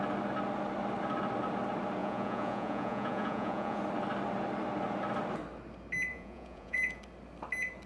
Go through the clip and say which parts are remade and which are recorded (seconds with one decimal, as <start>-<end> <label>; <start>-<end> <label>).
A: 0.0-2.0 recorded; 2.0-3.8 remade; 3.8-6.1 recorded; 6.1-7.0 remade; 7.0-7.9 recorded